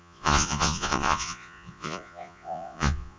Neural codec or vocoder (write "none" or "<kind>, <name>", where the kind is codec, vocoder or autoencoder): vocoder, Vocos